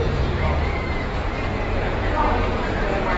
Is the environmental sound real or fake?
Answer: fake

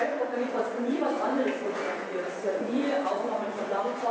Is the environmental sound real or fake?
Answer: fake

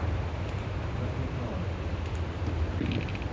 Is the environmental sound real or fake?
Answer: real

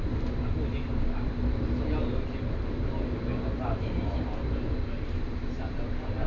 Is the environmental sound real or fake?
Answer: real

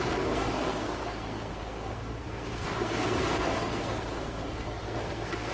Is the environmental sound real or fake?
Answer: fake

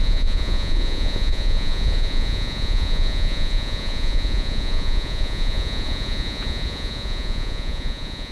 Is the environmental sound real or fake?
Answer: fake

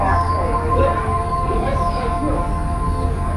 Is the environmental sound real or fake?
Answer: fake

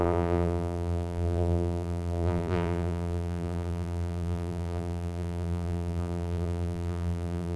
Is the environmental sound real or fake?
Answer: fake